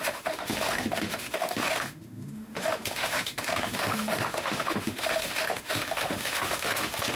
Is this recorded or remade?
remade